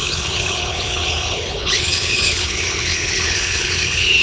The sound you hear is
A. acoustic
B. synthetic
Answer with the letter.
B